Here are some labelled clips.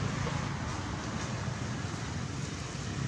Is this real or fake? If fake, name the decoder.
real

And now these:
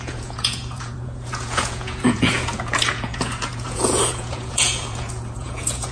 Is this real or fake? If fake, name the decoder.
fake, vocoder, Vocos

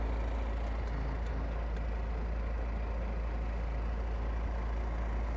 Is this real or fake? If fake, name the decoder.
real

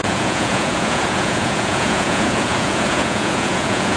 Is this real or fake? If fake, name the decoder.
fake, vocoder, Vocos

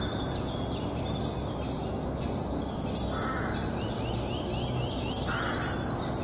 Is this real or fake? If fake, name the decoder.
real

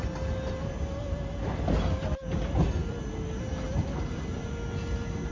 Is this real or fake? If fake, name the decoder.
real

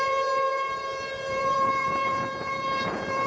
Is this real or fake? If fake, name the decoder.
fake, vocoder, Vocos